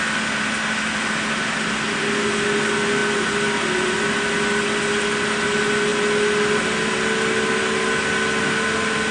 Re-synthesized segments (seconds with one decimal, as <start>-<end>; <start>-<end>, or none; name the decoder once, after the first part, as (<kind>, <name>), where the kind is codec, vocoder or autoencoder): none